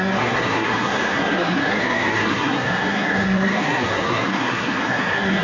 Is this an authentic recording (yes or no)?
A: no